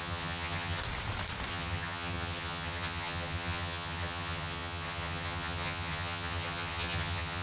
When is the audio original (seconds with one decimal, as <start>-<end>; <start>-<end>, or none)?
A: 0.8-1.5